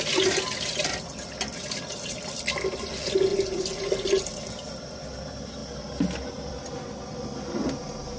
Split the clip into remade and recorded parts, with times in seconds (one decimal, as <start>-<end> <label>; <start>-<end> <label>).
0.0-8.2 recorded